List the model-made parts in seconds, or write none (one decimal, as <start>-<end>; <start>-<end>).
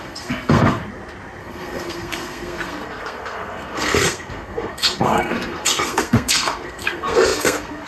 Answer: 0.0-0.8; 1.4-7.9